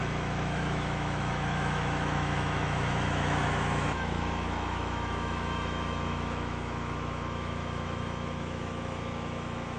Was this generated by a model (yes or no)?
yes